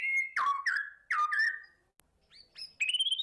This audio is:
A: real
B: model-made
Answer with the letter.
A